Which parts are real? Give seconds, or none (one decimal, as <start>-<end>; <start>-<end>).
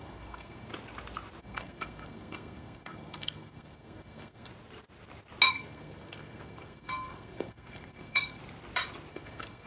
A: 0.7-1.4; 4.5-5.5; 8.4-9.1